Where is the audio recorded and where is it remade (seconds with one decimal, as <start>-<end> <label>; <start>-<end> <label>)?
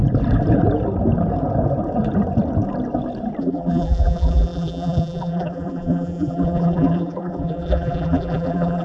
0.0-3.4 recorded; 3.4-8.8 remade